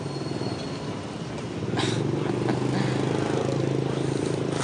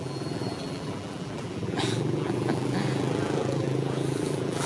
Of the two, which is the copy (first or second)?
second